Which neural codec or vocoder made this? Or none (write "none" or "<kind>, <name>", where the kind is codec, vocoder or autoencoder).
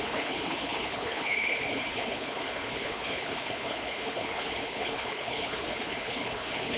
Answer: codec, HILCodec